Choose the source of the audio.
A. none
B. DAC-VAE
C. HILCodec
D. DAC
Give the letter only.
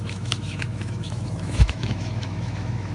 B